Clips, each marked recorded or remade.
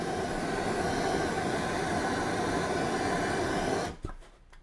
recorded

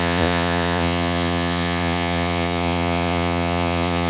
remade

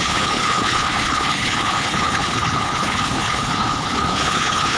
remade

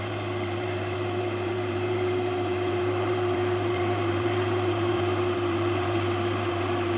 remade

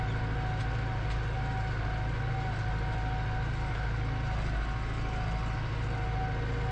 recorded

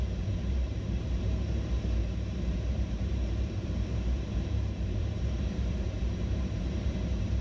remade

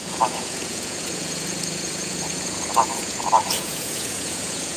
remade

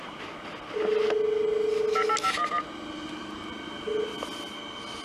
recorded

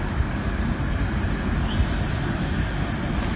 recorded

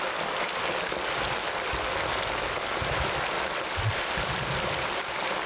recorded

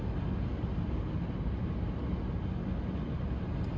recorded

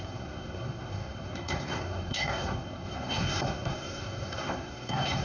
remade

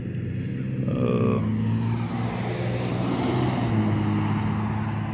recorded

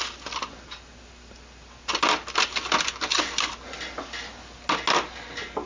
recorded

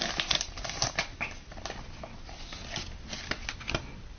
recorded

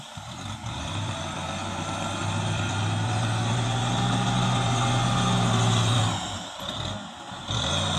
recorded